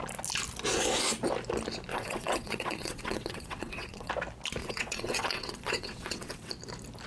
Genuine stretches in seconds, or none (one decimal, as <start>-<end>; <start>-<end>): 0.0-1.9; 4.1-4.6; 6.5-7.1